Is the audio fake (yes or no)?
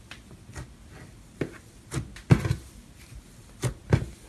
no